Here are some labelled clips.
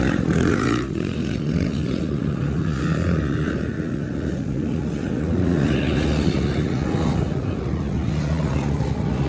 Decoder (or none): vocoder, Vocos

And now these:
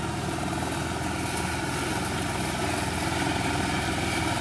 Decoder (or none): none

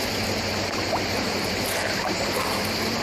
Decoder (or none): none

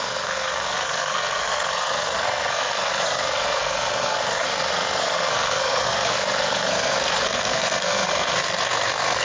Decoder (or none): codec, SNAC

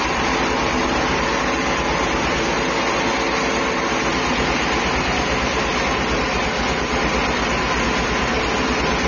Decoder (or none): none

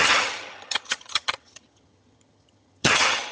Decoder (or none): vocoder, HiFi-GAN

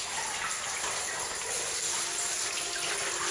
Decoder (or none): none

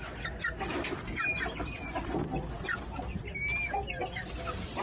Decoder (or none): none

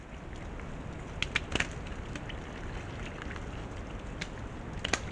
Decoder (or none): none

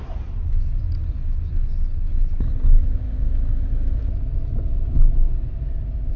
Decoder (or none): none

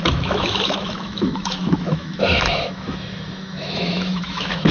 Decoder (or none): autoencoder, DAC-VAE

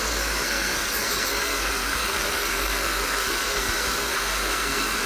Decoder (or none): codec, SNAC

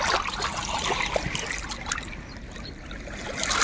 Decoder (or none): none